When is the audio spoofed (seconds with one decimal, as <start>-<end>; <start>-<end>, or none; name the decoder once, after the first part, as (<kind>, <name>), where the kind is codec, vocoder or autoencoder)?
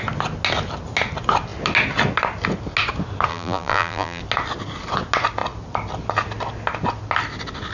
3.3-4.2 (vocoder, BigVGAN v2)